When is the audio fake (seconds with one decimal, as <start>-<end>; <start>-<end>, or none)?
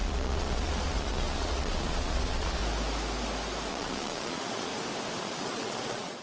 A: 0.0-2.6; 3.7-4.7; 5.2-6.2